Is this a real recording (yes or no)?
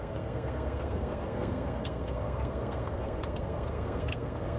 no